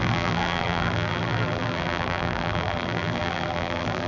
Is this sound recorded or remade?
remade